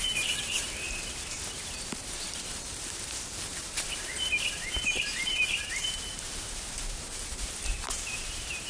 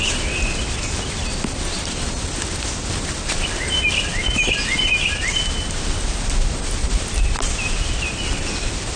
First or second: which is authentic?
second